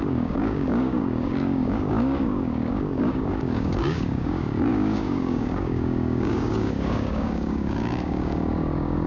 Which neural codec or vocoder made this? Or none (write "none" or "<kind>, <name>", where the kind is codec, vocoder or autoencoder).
codec, DAC